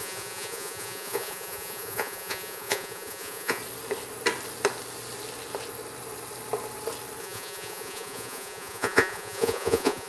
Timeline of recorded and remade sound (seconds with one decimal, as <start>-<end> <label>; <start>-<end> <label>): 0.0-3.6 remade; 3.6-7.2 recorded; 7.2-10.1 remade